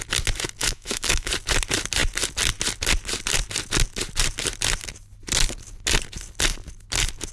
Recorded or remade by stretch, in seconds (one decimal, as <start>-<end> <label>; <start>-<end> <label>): 0.0-0.6 recorded; 0.6-1.3 remade; 1.3-7.3 recorded